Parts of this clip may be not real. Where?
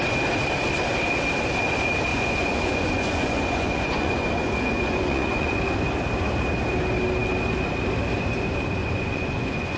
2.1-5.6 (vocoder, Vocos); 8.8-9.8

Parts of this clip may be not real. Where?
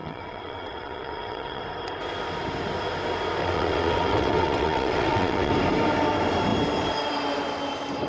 0.0-1.6 (vocoder, WaveNeXt); 3.4-5.5